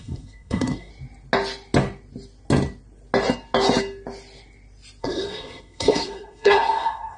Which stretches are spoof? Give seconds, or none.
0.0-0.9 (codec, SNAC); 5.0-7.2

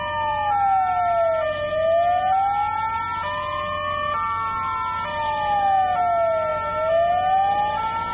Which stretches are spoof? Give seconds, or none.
none

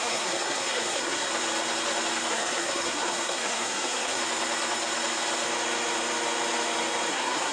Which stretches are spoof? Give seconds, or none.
0.0-1.3 (codec, SNAC); 2.3-4.2; 7.1-7.5

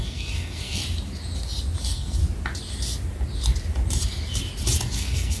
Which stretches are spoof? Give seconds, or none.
0.0-0.8 (codec, SNAC); 1.8-2.2; 4.9-5.4